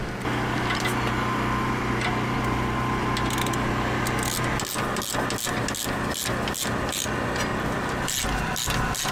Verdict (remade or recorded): recorded